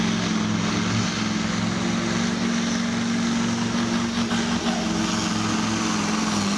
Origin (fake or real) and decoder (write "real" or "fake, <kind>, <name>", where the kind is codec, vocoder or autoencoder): real